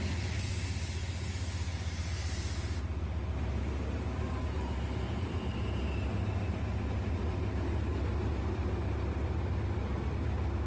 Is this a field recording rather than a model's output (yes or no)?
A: yes